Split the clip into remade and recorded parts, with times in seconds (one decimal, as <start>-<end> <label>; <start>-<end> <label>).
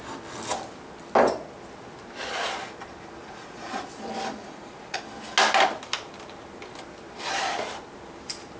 0.0-3.2 recorded; 3.2-3.8 remade; 3.8-4.4 recorded; 4.4-5.0 remade; 5.0-8.6 recorded